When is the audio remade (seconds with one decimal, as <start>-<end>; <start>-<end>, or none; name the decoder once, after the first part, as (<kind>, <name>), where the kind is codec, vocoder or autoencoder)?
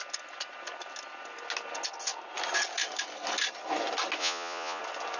4.2-4.8 (vocoder, Vocos)